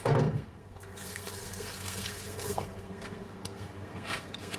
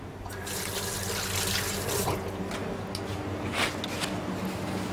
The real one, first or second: second